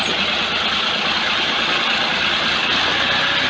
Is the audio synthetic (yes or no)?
no